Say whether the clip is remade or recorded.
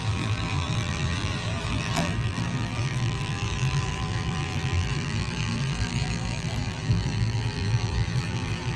remade